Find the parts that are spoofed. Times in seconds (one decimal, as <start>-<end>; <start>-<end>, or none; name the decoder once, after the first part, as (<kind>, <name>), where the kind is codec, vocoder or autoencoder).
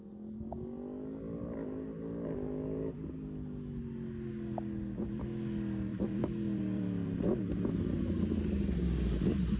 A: 5.9-7.7 (vocoder, BigVGAN v2)